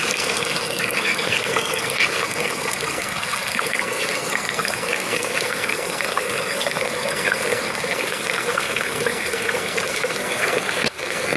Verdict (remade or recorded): remade